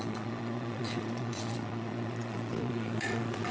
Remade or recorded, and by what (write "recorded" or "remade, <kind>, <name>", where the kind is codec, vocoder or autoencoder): remade, vocoder, Vocos